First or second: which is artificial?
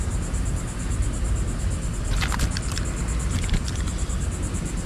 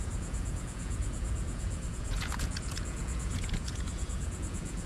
second